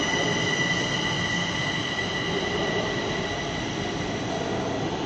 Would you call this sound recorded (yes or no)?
no